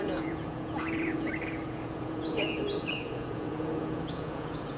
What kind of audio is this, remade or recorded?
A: remade